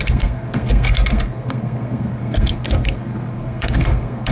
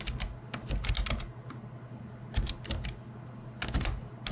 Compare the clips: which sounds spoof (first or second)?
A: first